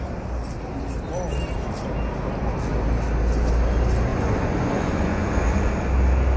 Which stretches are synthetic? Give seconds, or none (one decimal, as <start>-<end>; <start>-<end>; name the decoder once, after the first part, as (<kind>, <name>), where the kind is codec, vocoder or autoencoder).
4.1-5.7 (vocoder, Vocos)

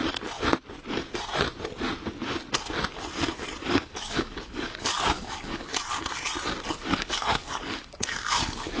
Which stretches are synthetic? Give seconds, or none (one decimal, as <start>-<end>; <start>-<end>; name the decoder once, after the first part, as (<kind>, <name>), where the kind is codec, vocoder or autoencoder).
3.6-5.7 (codec, DAC); 6.7-8.8

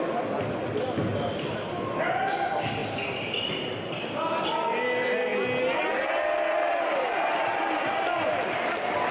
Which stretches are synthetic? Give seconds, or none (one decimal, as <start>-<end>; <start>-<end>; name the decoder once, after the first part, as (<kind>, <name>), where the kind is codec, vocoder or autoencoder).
none

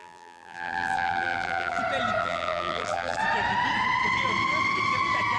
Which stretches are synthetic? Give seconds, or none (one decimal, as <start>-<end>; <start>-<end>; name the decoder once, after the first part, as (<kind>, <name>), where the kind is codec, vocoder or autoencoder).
0.0-1.8 (vocoder, BigVGAN v2); 2.2-3.2

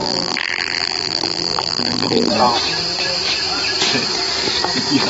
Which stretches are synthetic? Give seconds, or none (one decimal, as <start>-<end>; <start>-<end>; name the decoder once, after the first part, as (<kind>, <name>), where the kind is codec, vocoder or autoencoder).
0.0-2.3 (vocoder, BigVGAN v2)

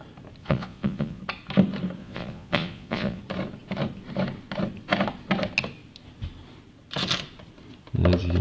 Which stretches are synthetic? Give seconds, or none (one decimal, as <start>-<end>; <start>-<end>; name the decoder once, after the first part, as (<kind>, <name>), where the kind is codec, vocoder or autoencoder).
0.4-1.2 (vocoder, Vocos); 2.0-3.2

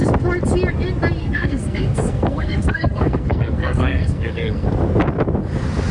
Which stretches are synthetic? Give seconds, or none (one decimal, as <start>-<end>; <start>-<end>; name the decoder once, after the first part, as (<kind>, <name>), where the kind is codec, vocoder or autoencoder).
1.2-4.7 (codec, SNAC)

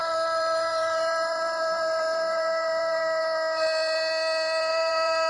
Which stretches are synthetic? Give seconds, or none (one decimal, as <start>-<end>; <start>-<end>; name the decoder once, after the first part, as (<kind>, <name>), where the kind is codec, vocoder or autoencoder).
0.0-3.2 (vocoder, BigVGAN v2); 4.7-5.3